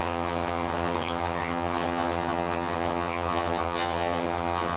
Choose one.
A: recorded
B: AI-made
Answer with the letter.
B